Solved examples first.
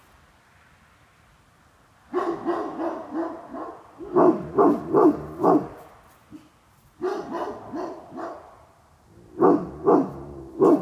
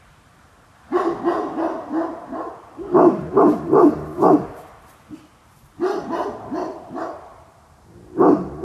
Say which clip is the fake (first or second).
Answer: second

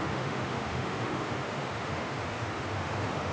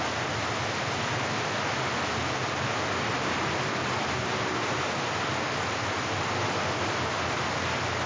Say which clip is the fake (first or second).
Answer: first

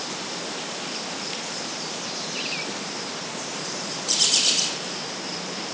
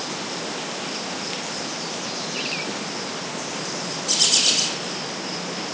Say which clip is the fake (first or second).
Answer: first